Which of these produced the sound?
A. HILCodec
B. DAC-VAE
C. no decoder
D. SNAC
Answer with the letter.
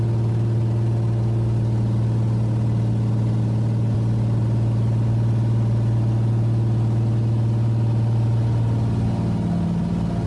C